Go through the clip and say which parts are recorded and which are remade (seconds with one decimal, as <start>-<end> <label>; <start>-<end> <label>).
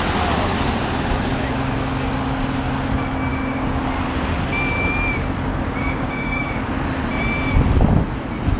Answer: 0.0-3.3 recorded; 3.3-3.8 remade; 3.8-5.8 recorded; 5.8-6.5 remade; 6.5-8.6 recorded